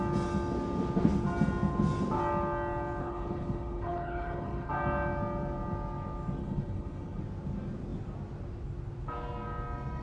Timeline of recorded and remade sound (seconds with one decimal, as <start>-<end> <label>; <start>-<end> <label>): 0.0-3.0 recorded; 3.0-4.7 remade; 4.7-6.4 recorded; 6.4-7.2 remade; 7.2-10.0 recorded